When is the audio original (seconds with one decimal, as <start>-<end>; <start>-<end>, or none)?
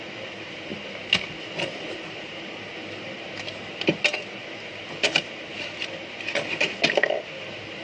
0.0-7.8